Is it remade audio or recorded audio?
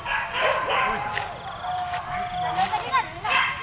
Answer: recorded